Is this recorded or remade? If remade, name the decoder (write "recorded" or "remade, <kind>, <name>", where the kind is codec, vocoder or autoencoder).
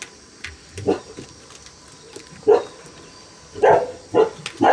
recorded